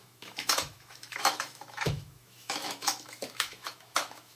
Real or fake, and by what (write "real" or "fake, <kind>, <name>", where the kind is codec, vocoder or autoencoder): fake, autoencoder, DAC-VAE